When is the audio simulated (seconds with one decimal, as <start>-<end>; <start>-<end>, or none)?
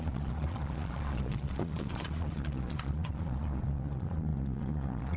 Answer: 0.0-5.2